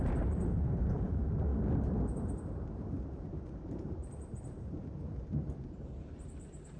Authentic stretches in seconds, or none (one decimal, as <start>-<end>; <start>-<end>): 1.5-2.7

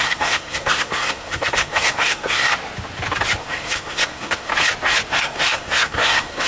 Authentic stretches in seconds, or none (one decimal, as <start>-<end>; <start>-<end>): 2.5-3.4; 4.5-5.1

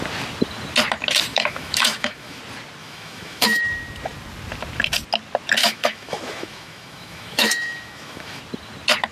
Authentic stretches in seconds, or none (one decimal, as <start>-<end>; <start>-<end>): 0.0-1.3; 2.4-2.8; 3.6-5.6; 8.4-9.1

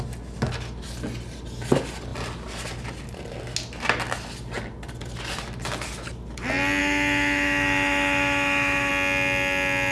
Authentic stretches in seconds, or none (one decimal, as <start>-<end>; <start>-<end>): 0.0-6.8; 8.9-9.9

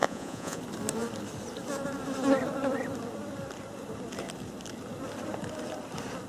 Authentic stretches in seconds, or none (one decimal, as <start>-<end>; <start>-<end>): 0.6-6.3